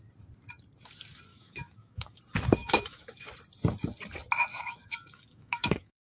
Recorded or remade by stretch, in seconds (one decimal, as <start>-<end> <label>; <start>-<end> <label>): 0.0-1.3 recorded; 1.3-2.2 remade; 2.2-2.6 recorded; 2.6-3.3 remade; 3.3-4.5 recorded; 4.5-6.0 remade